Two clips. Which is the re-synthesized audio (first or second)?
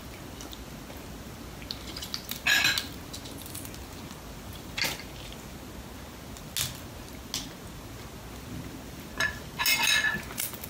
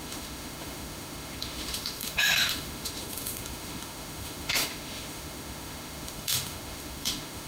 second